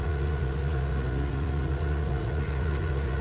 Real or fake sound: fake